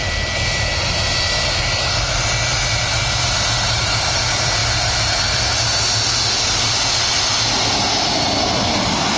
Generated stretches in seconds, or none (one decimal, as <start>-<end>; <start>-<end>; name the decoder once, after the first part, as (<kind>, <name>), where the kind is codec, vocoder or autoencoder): none